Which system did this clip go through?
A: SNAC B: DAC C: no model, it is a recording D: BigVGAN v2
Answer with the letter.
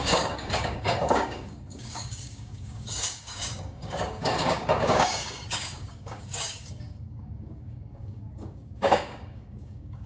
B